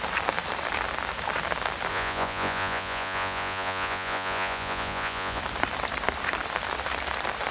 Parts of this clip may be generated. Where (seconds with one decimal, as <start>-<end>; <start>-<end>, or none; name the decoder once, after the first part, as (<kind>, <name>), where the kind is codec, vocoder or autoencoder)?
1.9-5.4 (vocoder, Vocos)